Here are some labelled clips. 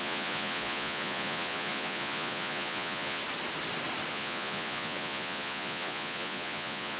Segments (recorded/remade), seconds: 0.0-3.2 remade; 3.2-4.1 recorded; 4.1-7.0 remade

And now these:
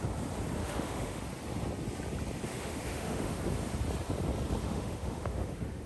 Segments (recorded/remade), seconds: 0.0-0.6 recorded; 0.6-1.2 remade; 1.2-2.5 recorded; 2.5-3.4 remade; 3.4-4.6 recorded; 4.6-5.9 remade

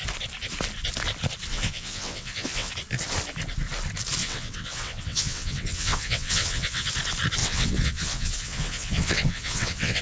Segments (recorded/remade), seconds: 0.0-1.5 recorded; 1.5-2.7 remade; 2.7-4.2 recorded; 4.2-6.9 remade; 6.9-7.4 recorded; 7.4-10.0 remade